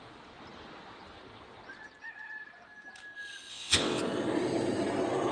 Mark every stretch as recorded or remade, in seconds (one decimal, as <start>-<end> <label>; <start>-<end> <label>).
0.0-3.5 recorded; 3.5-4.0 remade; 4.0-5.3 recorded